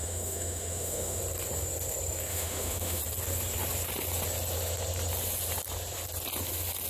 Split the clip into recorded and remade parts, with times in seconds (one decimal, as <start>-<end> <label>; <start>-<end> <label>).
0.0-1.2 remade; 1.2-2.3 recorded; 2.3-3.0 remade; 3.0-6.9 recorded